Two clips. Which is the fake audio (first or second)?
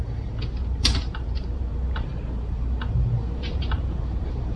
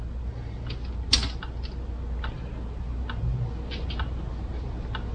first